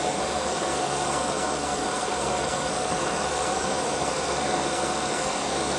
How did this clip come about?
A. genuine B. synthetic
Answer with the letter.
B